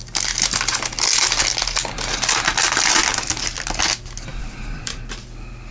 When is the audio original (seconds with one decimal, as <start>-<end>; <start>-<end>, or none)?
0.0-4.4; 5.0-5.7

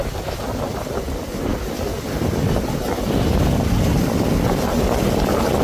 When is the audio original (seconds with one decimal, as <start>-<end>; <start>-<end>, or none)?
0.0-5.6